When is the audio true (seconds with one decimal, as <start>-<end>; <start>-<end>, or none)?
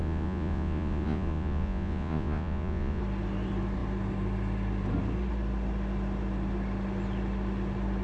3.0-8.0